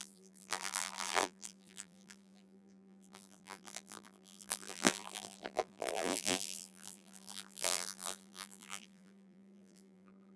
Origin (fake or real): fake